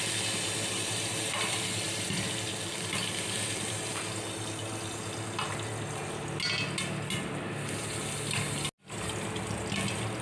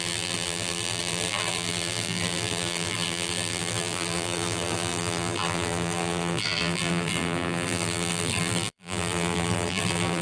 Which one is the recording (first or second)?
first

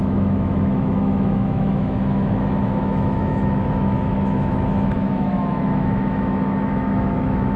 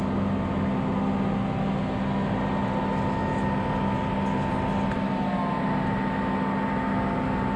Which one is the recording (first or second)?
second